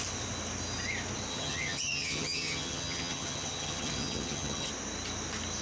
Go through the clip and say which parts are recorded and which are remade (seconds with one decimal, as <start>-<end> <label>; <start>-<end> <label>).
0.0-1.3 recorded; 1.3-4.7 remade; 4.7-5.6 recorded